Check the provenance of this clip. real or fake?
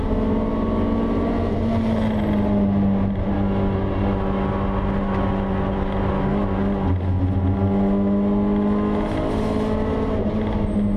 real